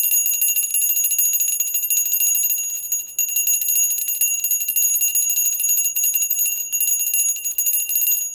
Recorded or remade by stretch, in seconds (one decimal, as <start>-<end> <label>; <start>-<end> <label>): 0.0-5.4 recorded; 5.4-6.7 remade; 6.7-8.3 recorded